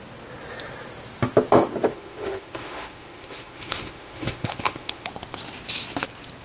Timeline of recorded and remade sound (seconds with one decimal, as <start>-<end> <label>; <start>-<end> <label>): 0.0-1.9 recorded; 1.9-5.1 remade; 5.1-6.4 recorded